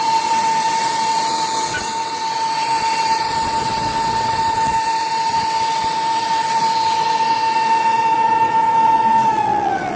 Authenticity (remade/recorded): remade